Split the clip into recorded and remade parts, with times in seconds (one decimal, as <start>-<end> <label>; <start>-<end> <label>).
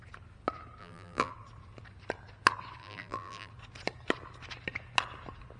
0.0-0.8 recorded; 0.8-1.3 remade; 1.3-2.8 recorded; 2.8-3.5 remade; 3.5-5.6 recorded